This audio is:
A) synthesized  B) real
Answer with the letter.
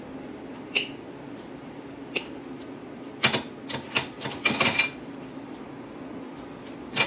B